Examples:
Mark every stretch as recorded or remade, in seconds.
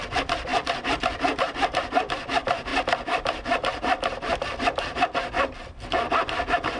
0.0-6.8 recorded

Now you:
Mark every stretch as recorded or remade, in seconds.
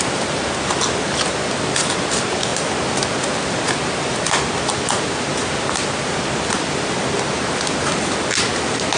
0.0-9.0 recorded